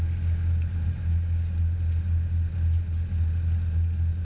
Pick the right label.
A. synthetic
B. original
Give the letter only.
B